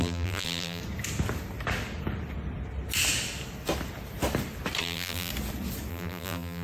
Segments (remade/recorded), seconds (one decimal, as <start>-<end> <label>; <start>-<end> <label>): 0.0-0.8 remade; 0.8-4.8 recorded; 4.8-5.3 remade; 5.3-5.9 recorded; 5.9-6.6 remade